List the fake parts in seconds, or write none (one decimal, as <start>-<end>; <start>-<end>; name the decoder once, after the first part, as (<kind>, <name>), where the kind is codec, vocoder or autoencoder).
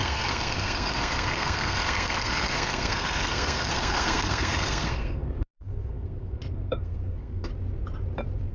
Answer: 0.0-7.5 (codec, SNAC)